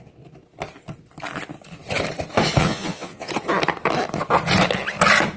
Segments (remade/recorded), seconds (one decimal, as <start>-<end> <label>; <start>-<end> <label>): 0.0-2.6 recorded; 2.6-3.3 remade; 3.3-5.4 recorded